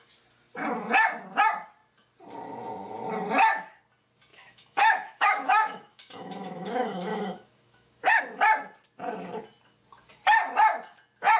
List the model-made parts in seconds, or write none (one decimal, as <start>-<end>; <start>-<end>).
4.3-8.2